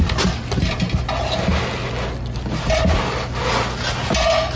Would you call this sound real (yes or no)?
yes